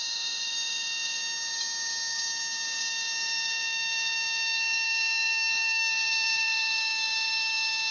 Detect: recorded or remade remade